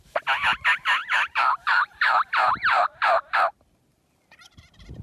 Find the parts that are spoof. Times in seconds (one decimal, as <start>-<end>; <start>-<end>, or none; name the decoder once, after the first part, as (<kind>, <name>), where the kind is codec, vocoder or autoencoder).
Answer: 1.0-3.3 (vocoder, BigVGAN v2)